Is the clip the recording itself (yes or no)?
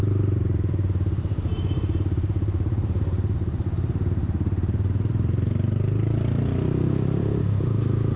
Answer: no